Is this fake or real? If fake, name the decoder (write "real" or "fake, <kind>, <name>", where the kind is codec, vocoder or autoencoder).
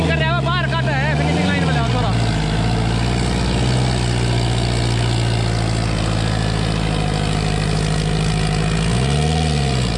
real